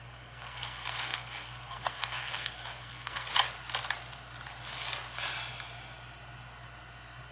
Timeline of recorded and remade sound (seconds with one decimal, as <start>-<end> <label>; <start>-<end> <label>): 0.0-3.3 remade; 3.3-7.3 recorded